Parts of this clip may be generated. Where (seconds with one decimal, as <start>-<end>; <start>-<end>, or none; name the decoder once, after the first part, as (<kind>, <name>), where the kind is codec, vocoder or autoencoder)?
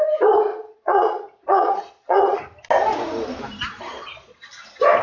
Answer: 0.5-2.4 (vocoder, Vocos); 3.9-4.5